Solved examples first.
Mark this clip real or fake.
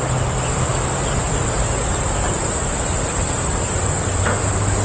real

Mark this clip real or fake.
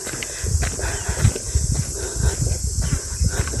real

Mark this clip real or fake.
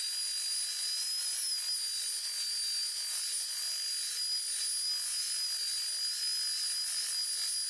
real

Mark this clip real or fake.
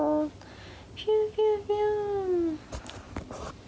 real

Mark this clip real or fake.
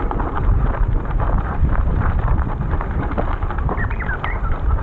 fake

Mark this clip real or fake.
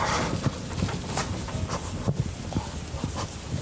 real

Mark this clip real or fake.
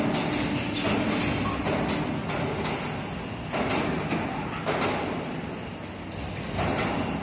real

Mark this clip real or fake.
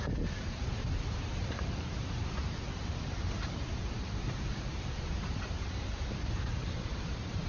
fake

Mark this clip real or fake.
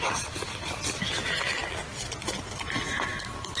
real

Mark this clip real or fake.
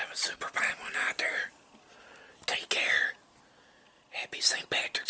real